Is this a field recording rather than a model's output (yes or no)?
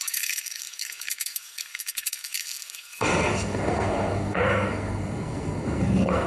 no